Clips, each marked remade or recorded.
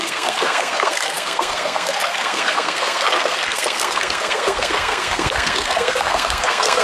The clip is remade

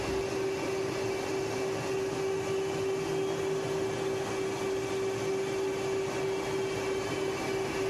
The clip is recorded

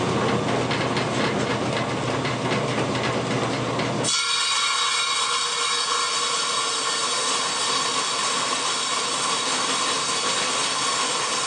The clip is recorded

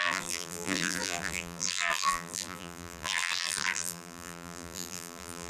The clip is remade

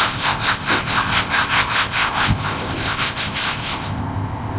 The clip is remade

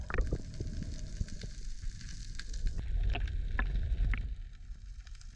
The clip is recorded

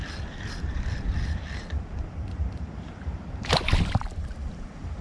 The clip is remade